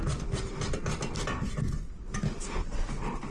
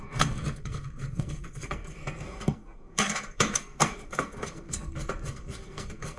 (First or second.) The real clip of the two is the first